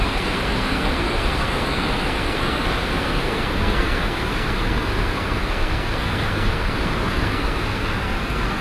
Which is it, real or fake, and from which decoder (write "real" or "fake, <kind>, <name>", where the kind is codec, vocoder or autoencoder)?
fake, codec, SNAC